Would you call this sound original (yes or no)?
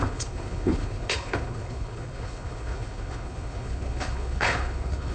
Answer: no